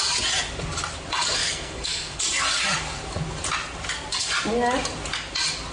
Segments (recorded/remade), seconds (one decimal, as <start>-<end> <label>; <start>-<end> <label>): 0.0-1.4 recorded; 1.4-2.2 remade; 2.2-5.7 recorded